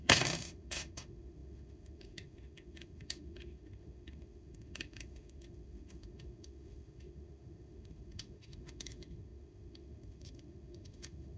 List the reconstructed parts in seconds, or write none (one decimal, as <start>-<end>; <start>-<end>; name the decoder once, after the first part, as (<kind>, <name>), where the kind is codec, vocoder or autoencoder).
0.0-11.4 (autoencoder, DAC-VAE)